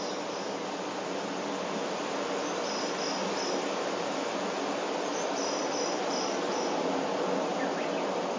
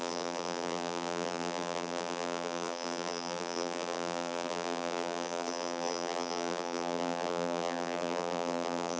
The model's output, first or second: second